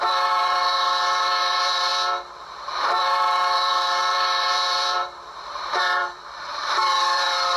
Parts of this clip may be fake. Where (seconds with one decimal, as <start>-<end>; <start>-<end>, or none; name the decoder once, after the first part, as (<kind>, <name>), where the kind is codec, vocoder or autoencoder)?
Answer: 0.0-1.9 (vocoder, BigVGAN v2); 2.8-7.6